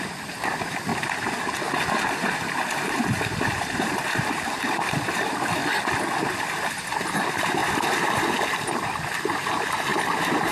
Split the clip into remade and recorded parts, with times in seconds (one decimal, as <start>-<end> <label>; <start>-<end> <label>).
0.0-0.9 remade; 0.9-1.9 recorded; 1.9-5.6 remade; 5.6-7.0 recorded; 7.0-7.6 remade; 7.6-9.3 recorded; 9.3-10.5 remade